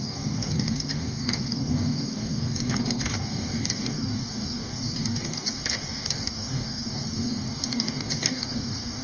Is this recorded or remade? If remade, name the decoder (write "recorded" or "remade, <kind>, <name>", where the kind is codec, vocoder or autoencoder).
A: remade, codec, DAC